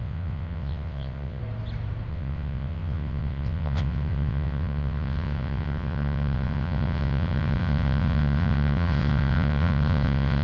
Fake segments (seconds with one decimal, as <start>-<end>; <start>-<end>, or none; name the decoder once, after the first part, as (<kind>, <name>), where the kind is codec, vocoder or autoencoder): 0.0-1.4 (vocoder, WaveNeXt); 2.1-10.4